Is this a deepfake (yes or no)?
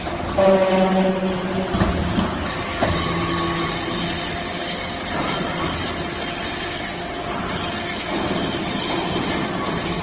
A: no